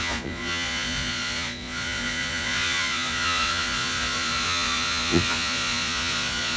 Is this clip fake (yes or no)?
yes